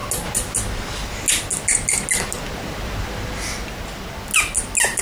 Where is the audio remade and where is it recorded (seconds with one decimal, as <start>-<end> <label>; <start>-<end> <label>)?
0.0-5.0 recorded